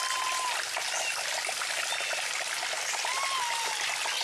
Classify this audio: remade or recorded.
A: recorded